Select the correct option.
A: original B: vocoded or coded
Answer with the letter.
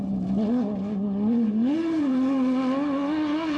A